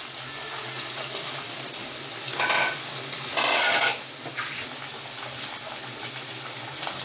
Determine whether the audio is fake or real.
real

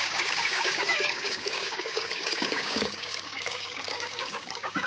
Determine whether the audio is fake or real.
fake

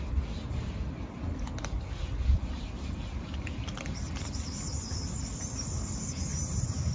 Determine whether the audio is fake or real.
real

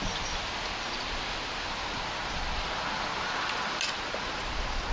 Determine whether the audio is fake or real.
real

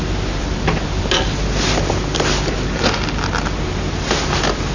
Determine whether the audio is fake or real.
real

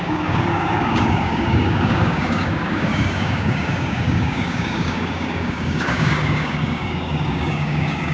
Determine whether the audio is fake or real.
fake